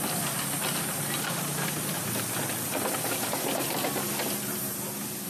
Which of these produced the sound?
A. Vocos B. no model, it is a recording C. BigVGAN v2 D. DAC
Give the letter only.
B